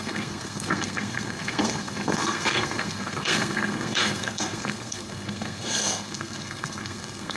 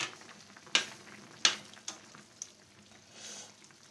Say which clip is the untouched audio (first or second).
second